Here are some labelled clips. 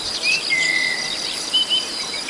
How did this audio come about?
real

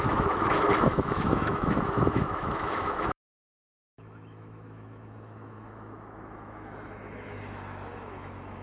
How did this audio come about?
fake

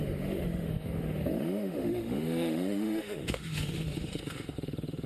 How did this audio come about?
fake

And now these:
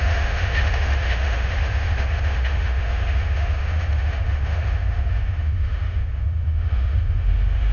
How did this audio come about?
fake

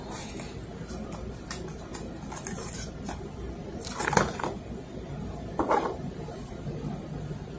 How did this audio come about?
real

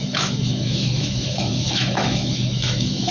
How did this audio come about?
fake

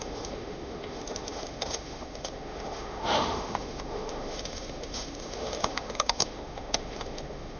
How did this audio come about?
fake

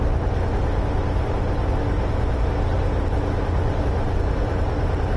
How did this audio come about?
real